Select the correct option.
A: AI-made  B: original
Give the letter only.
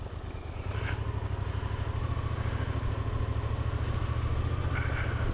B